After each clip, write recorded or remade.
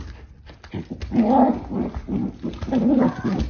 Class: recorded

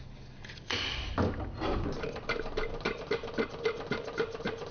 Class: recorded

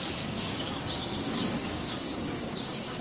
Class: remade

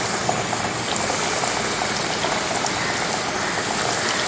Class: recorded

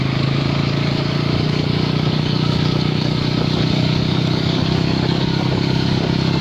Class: remade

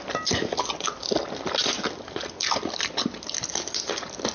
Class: recorded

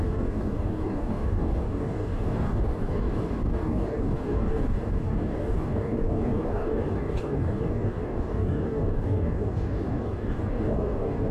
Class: remade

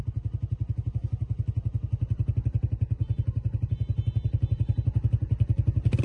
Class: recorded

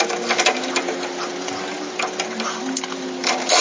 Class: recorded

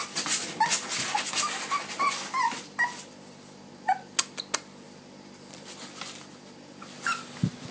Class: recorded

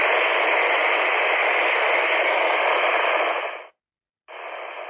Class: recorded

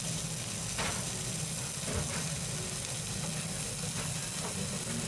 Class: recorded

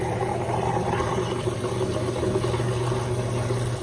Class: recorded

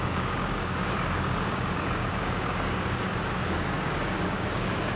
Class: remade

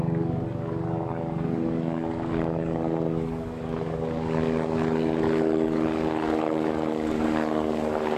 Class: remade